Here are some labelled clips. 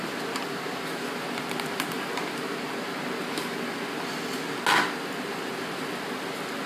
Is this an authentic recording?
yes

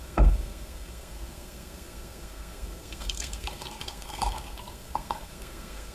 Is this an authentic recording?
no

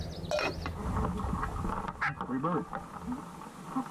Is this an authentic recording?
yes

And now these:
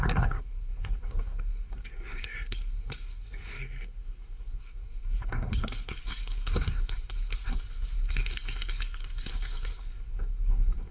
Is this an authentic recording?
no